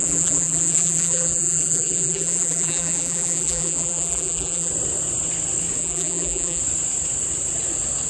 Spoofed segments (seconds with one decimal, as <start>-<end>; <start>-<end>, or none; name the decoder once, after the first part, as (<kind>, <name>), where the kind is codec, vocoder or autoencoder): 0.0-4.7 (vocoder, BigVGAN v2); 5.8-6.6